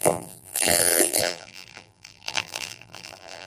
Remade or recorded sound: remade